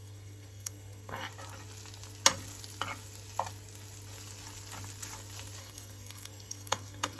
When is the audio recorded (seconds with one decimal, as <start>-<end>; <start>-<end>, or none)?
1.3-5.6